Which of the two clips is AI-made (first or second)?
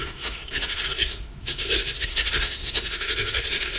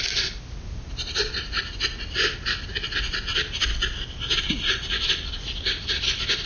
first